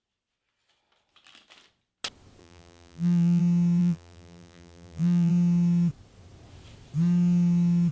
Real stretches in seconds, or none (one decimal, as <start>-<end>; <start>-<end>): 0.0-2.4; 3.4-3.8; 5.3-7.9